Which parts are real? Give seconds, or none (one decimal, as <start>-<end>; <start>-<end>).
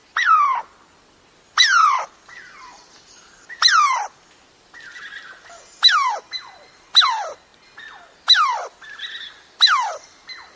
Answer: 0.0-10.6